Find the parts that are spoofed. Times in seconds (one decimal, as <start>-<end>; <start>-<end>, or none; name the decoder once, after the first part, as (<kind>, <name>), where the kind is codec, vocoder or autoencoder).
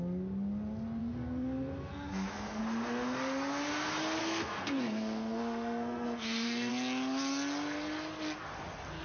1.0-2.6 (codec, SNAC); 4.2-6.7